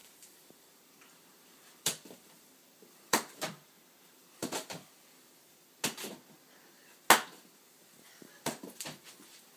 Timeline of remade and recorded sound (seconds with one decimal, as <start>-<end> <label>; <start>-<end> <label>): 0.0-4.4 remade; 4.4-7.7 recorded; 7.7-9.6 remade